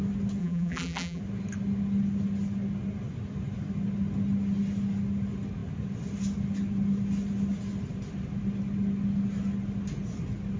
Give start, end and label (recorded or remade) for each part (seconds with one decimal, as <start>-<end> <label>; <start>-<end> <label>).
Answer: 0.0-0.4 recorded; 0.4-1.2 remade; 1.2-10.6 recorded